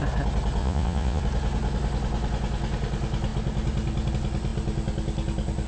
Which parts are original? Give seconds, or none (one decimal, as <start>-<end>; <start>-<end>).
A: 0.0-0.6; 1.2-5.7